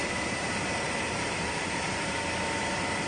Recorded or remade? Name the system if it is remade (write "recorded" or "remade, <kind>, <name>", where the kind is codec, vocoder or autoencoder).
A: remade, vocoder, BigVGAN v2